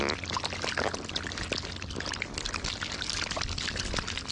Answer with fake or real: real